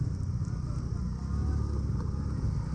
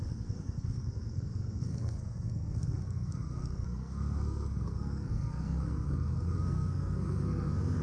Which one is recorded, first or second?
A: first